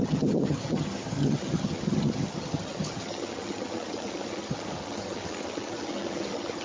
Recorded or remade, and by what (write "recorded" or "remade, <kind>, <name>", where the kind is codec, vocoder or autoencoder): remade, vocoder, HiFi-GAN